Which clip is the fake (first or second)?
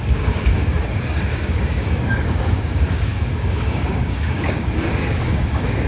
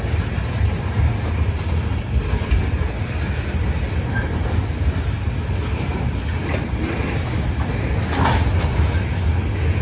first